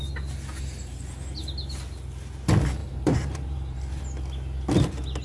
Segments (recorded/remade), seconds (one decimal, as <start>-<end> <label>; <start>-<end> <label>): 0.0-2.8 recorded; 2.8-4.0 remade; 4.0-5.2 recorded